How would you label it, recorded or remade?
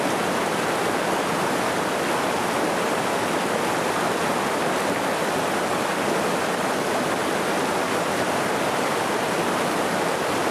recorded